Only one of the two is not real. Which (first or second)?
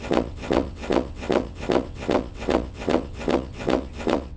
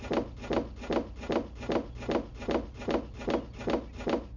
first